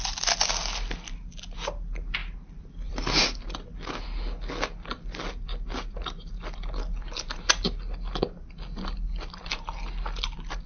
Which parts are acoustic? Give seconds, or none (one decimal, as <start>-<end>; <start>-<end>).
0.0-2.2; 2.9-10.7